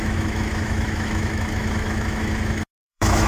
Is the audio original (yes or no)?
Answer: no